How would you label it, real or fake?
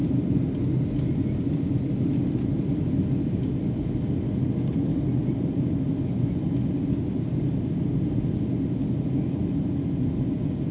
real